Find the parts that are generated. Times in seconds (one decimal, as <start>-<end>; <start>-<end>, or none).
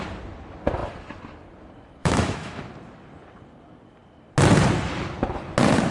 2.0-2.6